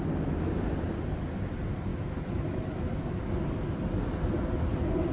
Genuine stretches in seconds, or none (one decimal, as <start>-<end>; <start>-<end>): 0.0-1.9; 3.3-5.1